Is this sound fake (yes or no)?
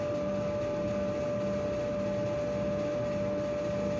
no